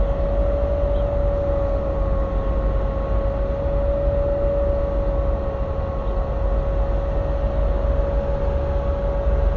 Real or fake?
real